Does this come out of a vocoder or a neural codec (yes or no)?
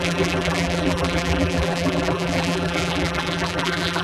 yes